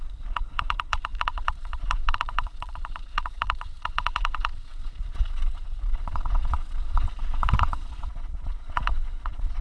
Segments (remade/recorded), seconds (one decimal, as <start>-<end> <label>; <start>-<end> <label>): 0.0-9.6 remade